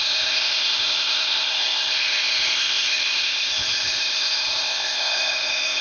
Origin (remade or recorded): remade